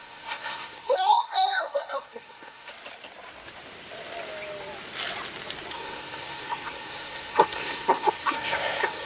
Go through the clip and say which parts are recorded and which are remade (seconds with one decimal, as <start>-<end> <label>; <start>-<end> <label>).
0.0-2.7 remade; 2.7-5.7 recorded; 5.7-9.1 remade